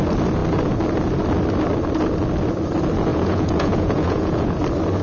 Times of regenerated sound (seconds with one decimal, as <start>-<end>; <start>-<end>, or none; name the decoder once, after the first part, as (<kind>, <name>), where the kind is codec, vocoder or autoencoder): 3.1-4.6 (vocoder, Vocos)